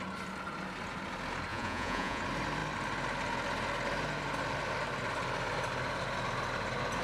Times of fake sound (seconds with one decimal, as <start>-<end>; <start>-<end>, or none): 1.5-2.2